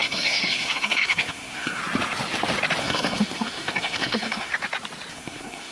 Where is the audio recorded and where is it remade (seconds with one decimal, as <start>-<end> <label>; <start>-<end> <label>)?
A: 0.0-1.8 remade; 1.8-2.8 recorded; 2.8-4.5 remade; 4.5-5.1 recorded; 5.1-5.7 remade